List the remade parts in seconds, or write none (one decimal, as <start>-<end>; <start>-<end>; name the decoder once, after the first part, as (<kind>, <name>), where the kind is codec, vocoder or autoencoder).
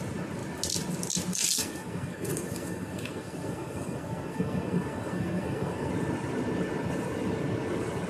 1.3-5.9 (codec, SNAC)